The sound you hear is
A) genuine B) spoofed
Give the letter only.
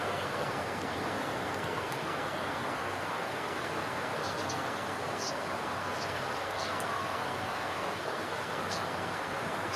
B